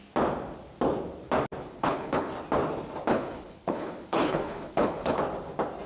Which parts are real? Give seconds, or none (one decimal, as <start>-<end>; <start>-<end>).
0.0-1.7; 2.3-3.1; 5.2-5.9